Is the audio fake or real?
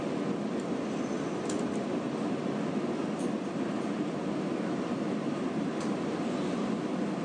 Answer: real